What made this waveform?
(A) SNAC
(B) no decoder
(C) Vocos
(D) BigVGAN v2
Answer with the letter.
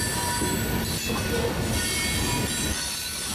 B